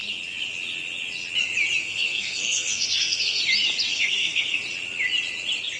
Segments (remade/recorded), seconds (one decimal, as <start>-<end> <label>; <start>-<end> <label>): 0.0-1.8 recorded; 1.8-3.4 remade; 3.4-3.9 recorded; 3.9-4.6 remade; 4.6-5.8 recorded